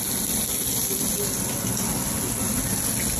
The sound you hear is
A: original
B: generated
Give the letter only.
A